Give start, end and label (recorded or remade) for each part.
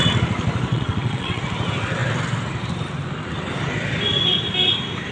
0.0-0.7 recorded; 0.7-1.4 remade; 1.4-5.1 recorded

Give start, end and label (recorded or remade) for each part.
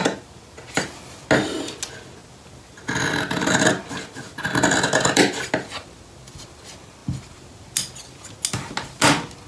0.0-9.5 recorded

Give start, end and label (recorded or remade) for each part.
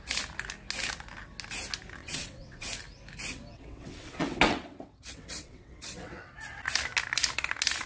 0.0-2.0 recorded; 2.0-2.7 remade; 2.7-3.5 recorded; 3.5-6.3 remade; 6.3-7.9 recorded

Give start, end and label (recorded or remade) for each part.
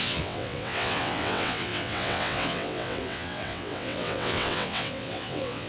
0.0-5.7 remade